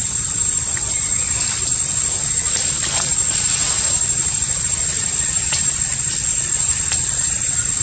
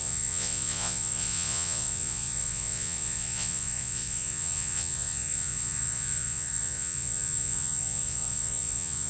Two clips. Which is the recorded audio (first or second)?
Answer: first